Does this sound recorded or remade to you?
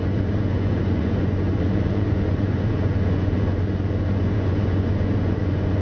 remade